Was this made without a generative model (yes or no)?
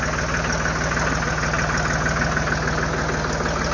yes